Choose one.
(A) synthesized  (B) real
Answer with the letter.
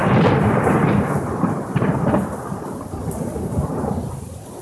A